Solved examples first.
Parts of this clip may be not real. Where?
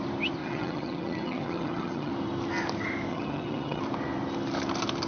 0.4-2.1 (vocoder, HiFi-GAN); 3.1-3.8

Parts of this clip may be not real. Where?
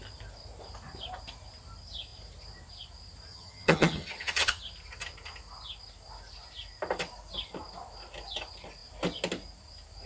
3.3-4.6 (vocoder, HiFi-GAN)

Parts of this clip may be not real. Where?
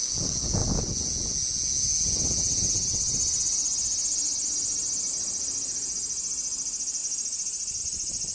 none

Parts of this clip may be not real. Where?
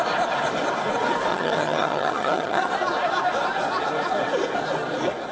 1.3-2.7 (vocoder, HiFi-GAN)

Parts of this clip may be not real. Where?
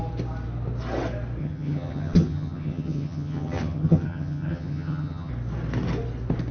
1.4-5.3 (vocoder, HiFi-GAN)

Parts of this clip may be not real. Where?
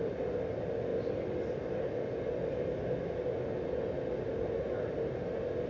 none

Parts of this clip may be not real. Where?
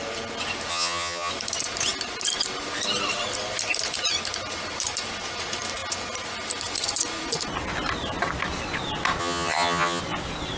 0.7-1.3 (vocoder, HiFi-GAN); 9.2-10.0